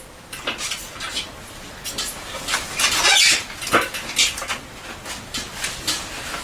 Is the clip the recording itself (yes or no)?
yes